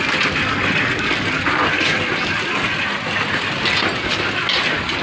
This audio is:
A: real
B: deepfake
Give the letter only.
A